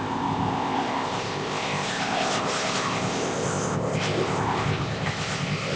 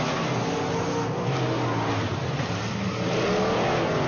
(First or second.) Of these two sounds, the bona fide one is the second